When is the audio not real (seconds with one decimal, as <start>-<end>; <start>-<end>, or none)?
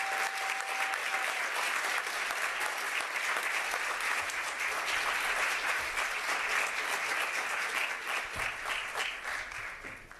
none